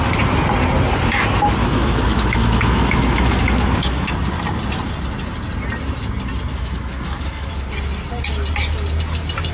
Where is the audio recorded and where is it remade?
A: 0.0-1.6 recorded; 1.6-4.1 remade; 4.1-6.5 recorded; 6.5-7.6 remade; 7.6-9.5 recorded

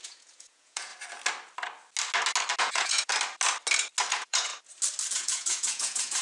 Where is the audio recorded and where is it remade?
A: 0.0-0.9 remade; 0.9-2.6 recorded; 2.6-3.1 remade; 3.1-4.1 recorded; 4.1-4.5 remade; 4.5-5.1 recorded; 5.1-6.2 remade

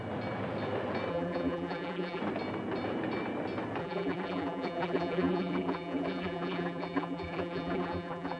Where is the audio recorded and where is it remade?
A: 0.0-1.1 recorded; 1.1-2.2 remade; 2.2-3.8 recorded; 3.8-8.4 remade

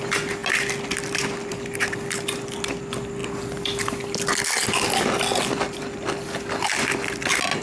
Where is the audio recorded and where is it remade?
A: 0.0-7.6 recorded

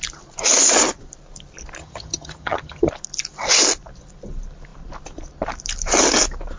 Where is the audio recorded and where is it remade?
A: 0.0-1.8 recorded; 1.8-2.9 remade; 2.9-6.6 recorded

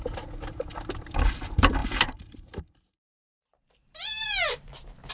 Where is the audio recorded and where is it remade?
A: 0.0-1.8 recorded; 1.8-5.1 remade

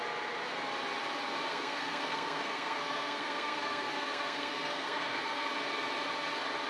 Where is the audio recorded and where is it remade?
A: 0.0-1.5 recorded; 1.5-5.5 remade; 5.5-6.7 recorded

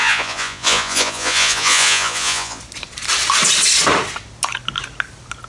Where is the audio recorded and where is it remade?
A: 0.0-2.6 remade; 2.6-5.5 recorded